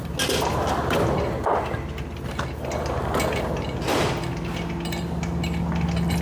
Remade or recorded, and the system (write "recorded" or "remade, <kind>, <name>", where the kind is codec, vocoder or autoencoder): recorded